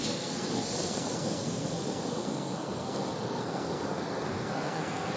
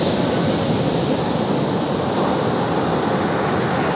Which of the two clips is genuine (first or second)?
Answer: second